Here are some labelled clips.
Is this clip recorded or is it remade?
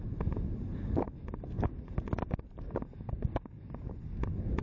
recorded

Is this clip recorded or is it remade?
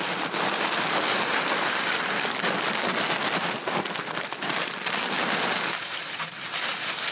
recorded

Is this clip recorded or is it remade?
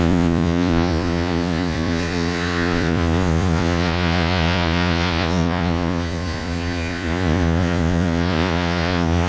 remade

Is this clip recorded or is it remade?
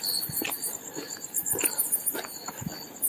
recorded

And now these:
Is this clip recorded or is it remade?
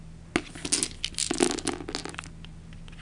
recorded